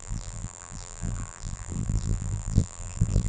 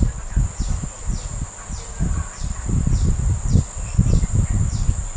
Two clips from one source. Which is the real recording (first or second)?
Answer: second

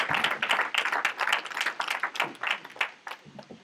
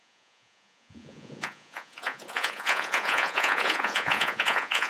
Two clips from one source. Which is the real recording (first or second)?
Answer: first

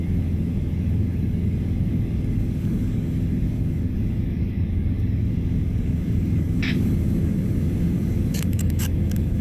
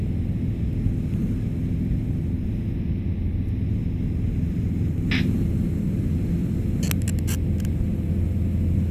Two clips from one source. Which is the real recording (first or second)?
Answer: second